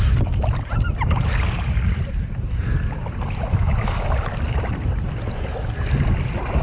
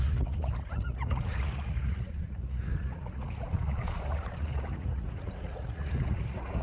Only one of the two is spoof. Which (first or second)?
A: second